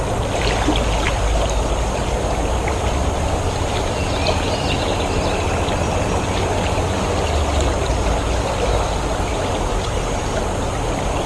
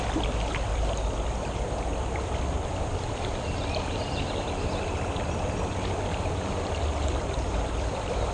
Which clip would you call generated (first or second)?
second